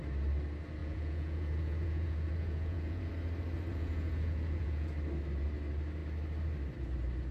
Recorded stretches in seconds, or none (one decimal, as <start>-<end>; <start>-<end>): 0.0-0.8; 3.1-3.7; 4.9-7.3